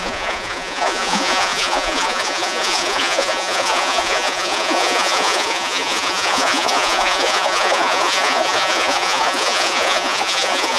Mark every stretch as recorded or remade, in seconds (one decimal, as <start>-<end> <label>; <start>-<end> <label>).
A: 0.0-10.8 remade